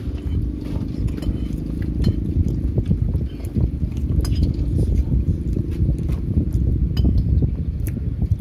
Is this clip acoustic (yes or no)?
yes